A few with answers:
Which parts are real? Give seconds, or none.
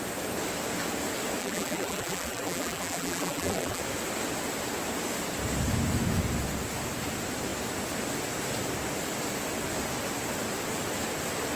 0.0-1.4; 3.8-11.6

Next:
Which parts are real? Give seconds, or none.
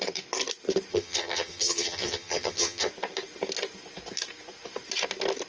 0.0-0.9; 2.9-5.5